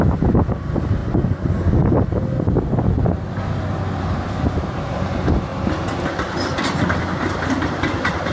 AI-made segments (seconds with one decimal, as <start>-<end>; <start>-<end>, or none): 0.0-1.0; 4.0-5.5; 7.0-8.3